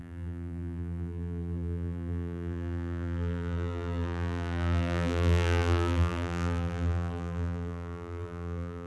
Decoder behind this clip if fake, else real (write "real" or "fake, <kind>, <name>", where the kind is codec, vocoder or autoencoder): fake, vocoder, BigVGAN v2